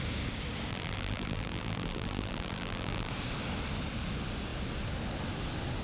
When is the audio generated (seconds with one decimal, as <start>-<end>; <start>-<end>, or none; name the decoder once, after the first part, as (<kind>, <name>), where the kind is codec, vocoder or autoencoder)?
0.7-3.1 (vocoder, BigVGAN v2)